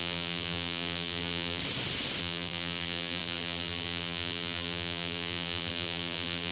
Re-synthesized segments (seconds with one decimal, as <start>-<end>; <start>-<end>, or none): 0.0-1.6; 2.2-6.5